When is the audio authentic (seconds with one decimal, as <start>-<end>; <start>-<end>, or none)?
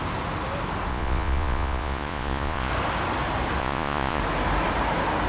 0.0-0.9; 2.7-3.6; 4.2-5.3